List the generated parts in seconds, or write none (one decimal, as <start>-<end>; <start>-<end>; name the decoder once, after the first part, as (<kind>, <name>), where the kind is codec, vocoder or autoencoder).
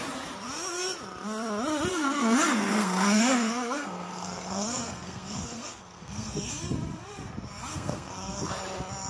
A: 1.9-6.5 (codec, SNAC); 7.7-8.5